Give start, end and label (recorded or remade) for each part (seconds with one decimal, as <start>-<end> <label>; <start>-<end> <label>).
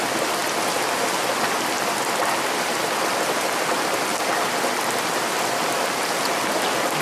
0.0-7.0 recorded